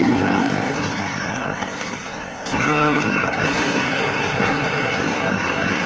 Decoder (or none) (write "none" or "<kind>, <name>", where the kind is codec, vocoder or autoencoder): codec, SNAC